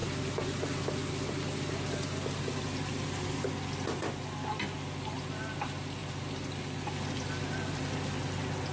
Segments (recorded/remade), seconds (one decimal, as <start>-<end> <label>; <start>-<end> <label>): 0.0-8.7 recorded

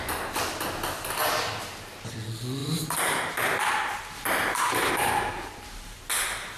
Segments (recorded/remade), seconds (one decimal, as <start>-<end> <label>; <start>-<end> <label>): 0.0-2.6 recorded; 2.6-6.6 remade

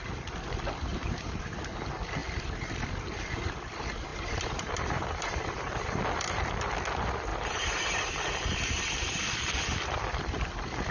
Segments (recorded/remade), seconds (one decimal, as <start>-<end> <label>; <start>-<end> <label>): 0.0-0.9 recorded; 0.9-1.6 remade; 1.6-4.1 recorded; 4.1-6.0 remade; 6.0-7.3 recorded; 7.3-9.2 remade; 9.2-10.9 recorded

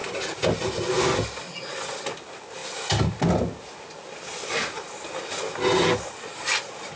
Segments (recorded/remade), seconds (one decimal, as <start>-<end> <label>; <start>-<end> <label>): 0.0-7.0 recorded

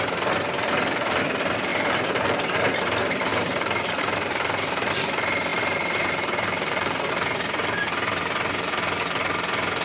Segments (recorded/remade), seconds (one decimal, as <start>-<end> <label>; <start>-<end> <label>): 0.0-1.7 recorded; 1.7-2.8 remade; 2.8-3.3 recorded; 3.3-4.9 remade; 4.9-5.5 recorded; 5.5-7.1 remade; 7.1-9.8 recorded

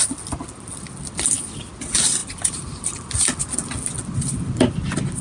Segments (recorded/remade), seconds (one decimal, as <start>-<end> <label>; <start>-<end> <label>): 0.0-2.2 recorded; 2.2-3.1 remade; 3.1-5.2 recorded

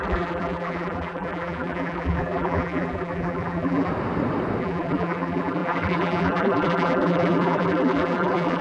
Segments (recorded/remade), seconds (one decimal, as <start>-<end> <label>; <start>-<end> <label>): 0.0-3.9 remade; 3.9-4.6 recorded; 4.6-8.6 remade